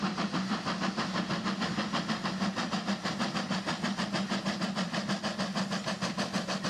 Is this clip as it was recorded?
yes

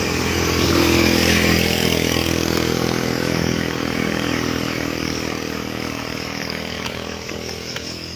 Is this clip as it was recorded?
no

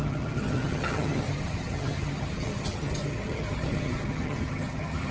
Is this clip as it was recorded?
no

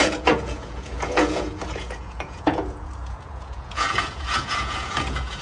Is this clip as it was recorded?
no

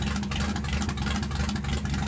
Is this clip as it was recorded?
yes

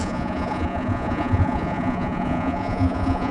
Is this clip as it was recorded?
no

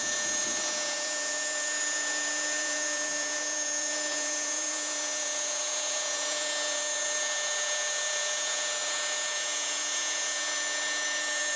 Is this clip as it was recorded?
no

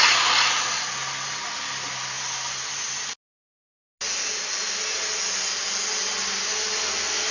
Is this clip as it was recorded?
yes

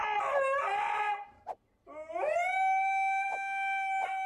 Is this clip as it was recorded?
yes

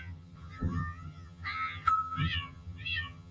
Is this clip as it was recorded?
no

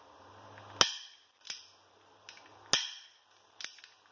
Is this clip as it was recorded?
yes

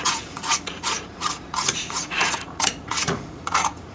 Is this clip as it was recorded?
no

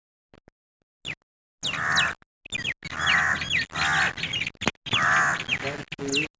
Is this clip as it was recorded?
yes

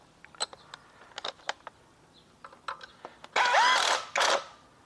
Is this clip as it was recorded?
yes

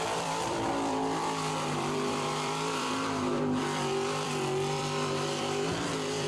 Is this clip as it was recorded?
no